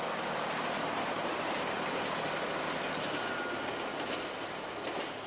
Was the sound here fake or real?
real